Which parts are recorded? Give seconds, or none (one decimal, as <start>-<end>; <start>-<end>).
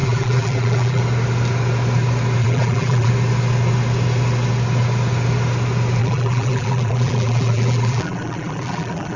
1.0-2.4; 3.1-6.0